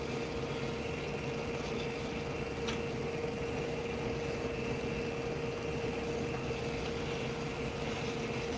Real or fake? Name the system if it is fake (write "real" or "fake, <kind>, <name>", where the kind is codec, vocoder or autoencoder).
real